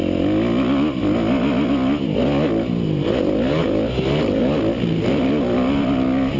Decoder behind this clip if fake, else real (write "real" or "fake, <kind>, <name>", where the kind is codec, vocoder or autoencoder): real